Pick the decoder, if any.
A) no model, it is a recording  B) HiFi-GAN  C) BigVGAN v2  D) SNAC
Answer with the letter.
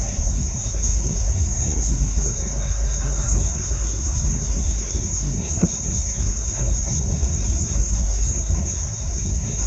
D